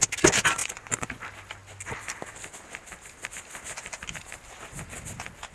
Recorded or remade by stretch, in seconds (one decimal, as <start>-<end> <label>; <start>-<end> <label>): 0.0-0.6 recorded; 0.6-1.2 remade; 1.2-5.5 recorded